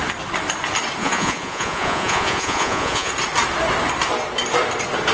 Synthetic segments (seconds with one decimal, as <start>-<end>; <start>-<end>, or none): 1.0-3.1